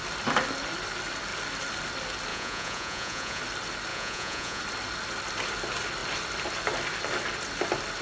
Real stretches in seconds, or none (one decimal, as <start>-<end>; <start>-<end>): 0.0-2.3; 3.4-3.9; 4.6-8.0